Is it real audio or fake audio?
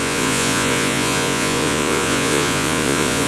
fake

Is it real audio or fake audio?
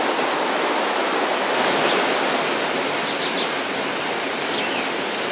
real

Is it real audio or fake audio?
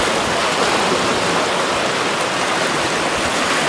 real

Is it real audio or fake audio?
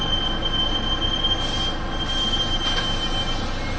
real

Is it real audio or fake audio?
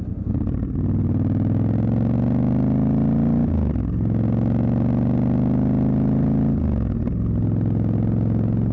real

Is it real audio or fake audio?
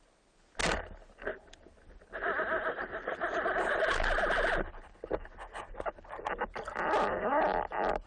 real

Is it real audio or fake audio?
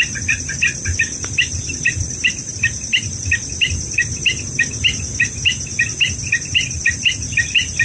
real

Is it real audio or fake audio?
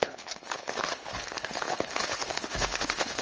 fake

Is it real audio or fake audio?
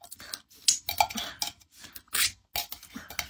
real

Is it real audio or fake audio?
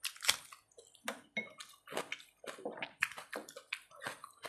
real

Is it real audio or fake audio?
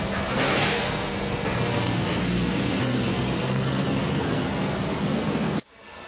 fake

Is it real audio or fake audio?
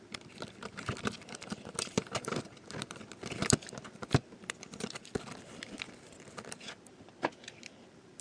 fake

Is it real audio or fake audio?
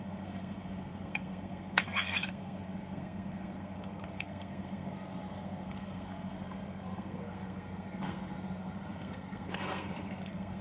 fake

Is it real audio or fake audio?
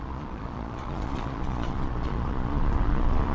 fake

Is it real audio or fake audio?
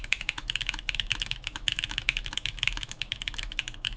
fake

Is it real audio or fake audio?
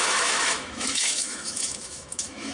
fake